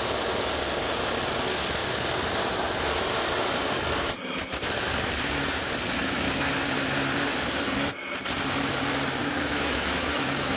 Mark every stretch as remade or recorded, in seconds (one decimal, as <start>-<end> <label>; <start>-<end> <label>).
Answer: 0.0-9.2 recorded; 9.2-10.6 remade

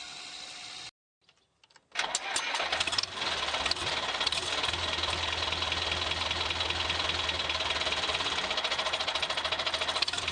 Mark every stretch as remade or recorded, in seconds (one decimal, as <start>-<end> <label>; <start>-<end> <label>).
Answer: 0.0-10.3 recorded